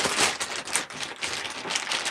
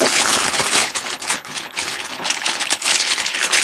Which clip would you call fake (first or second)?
second